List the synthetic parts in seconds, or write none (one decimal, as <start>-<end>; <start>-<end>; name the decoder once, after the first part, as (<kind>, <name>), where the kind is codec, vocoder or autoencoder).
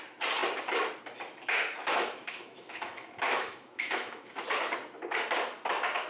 1.8-4.4 (autoencoder, DAC-VAE)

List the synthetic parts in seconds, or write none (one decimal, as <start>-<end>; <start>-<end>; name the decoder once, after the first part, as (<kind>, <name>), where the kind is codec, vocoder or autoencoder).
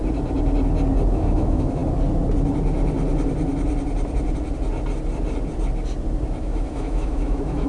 1.1-1.8 (autoencoder, DAC-VAE); 6.4-7.7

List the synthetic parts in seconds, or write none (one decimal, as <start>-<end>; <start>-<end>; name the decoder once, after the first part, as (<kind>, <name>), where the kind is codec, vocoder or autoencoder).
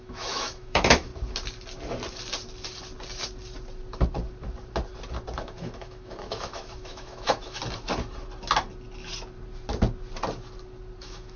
0.0-1.1 (autoencoder, DAC-VAE); 5.4-7.6; 11.0-11.4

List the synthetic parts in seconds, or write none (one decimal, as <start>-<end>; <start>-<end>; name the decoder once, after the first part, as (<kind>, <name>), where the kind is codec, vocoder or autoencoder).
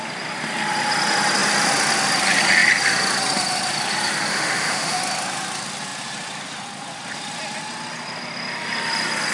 4.3-5.0 (autoencoder, DAC-VAE)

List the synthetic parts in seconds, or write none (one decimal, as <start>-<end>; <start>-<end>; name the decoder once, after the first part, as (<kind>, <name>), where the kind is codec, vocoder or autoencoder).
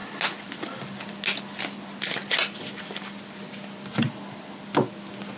none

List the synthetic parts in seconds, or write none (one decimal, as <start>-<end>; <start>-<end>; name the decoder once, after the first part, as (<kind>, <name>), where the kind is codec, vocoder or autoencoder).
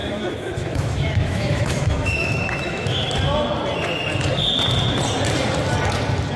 0.0-3.1 (autoencoder, DAC-VAE)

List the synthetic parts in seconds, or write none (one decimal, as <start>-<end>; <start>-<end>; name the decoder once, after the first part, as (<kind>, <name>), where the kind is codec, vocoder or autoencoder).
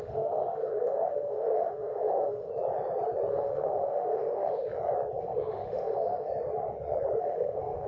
0.0-2.5 (autoencoder, DAC-VAE); 3.3-4.7; 5.2-6.3; 7.2-7.9